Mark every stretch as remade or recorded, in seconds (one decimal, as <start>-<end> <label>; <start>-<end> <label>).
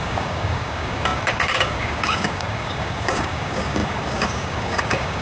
0.0-5.2 remade